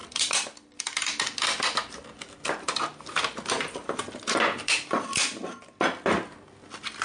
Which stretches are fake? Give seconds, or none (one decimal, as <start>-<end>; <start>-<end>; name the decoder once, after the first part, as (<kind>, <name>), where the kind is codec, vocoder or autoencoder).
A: none